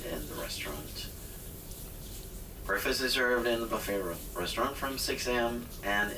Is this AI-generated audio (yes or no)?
no